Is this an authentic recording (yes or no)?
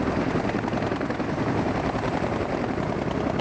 yes